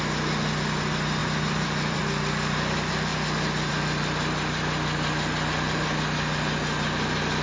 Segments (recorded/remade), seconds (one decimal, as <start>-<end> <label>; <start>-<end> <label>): 0.0-1.2 recorded; 1.2-2.0 remade; 2.0-7.4 recorded